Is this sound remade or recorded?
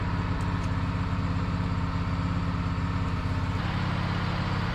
recorded